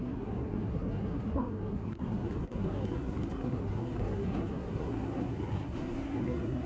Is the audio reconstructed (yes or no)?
yes